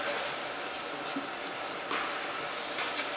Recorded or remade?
recorded